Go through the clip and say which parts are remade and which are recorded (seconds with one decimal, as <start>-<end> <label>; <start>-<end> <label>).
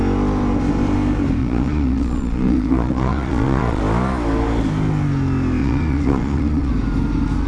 0.0-1.4 recorded; 1.4-3.8 remade; 3.8-5.6 recorded; 5.6-6.7 remade; 6.7-7.5 recorded